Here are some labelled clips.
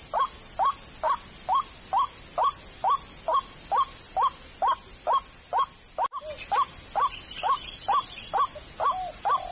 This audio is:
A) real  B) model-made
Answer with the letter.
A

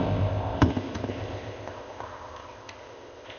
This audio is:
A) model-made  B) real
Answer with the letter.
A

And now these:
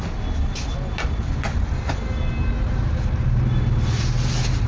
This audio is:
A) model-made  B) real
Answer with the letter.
B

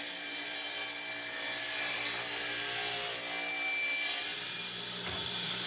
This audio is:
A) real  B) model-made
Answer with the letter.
A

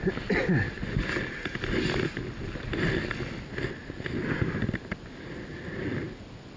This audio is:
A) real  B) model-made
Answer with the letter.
A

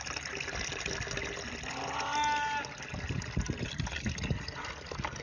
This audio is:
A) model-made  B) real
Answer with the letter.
B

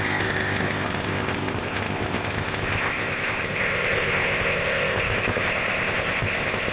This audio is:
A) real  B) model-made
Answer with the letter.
B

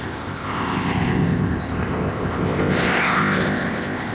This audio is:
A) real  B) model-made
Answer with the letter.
B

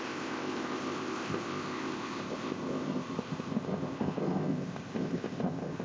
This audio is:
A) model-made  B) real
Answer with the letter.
A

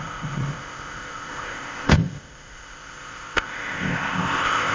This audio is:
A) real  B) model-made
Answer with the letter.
B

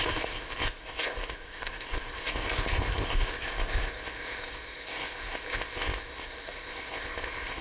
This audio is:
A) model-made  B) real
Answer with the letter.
A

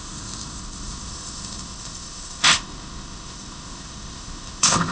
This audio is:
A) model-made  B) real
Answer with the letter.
A